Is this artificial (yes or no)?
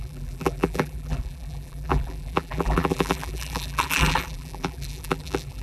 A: yes